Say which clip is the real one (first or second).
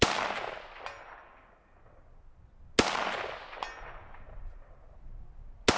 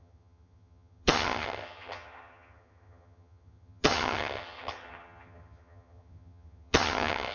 first